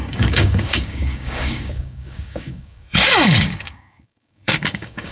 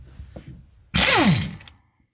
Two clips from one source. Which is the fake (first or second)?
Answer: first